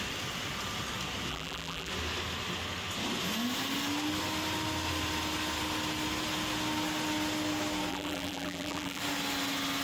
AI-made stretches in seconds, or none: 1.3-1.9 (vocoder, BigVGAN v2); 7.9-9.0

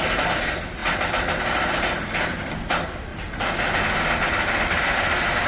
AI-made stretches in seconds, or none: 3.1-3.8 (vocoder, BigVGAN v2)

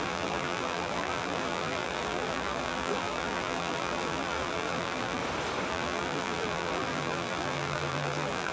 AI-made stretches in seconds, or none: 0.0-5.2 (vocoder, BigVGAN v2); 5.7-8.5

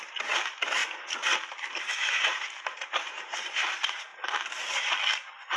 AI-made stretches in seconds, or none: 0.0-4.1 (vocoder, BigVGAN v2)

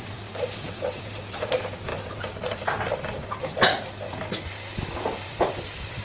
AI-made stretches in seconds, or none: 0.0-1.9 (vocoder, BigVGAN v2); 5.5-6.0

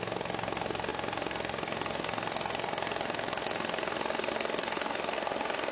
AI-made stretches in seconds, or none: none

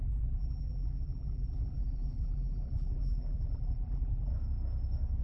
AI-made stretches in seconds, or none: 0.0-4.3 (vocoder, BigVGAN v2)

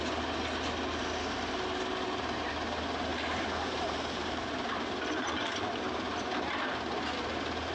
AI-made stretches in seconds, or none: 3.1-6.2 (vocoder, BigVGAN v2)